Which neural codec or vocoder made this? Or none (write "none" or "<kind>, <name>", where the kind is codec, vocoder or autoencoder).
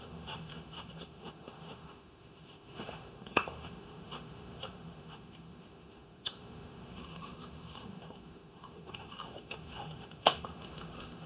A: autoencoder, DAC-VAE